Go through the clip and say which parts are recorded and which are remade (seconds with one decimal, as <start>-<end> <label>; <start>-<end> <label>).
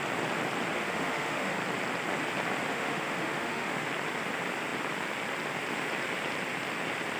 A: 0.0-0.7 recorded; 0.7-1.6 remade; 1.6-2.7 recorded; 2.7-3.9 remade; 3.9-7.2 recorded